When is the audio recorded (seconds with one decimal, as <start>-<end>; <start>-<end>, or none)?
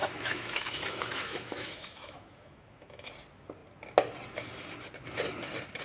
3.1-5.8